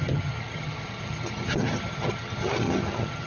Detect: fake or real fake